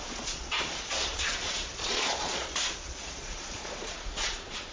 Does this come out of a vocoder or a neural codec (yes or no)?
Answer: yes